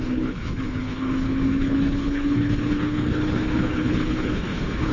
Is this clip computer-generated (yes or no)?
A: yes